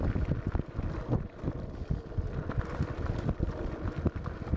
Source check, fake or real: real